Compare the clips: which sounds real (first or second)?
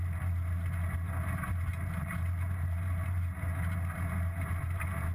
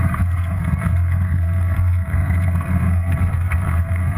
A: first